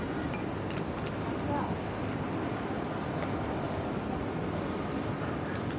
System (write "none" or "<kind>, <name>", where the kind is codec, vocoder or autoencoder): none